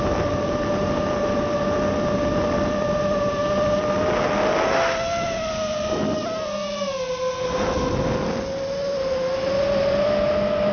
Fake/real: real